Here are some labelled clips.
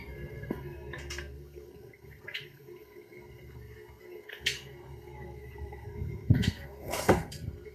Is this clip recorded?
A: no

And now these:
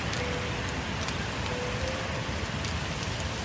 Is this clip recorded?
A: yes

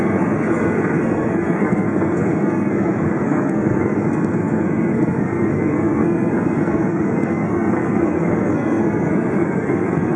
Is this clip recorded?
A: no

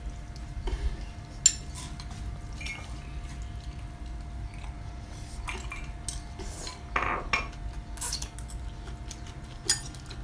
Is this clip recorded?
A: yes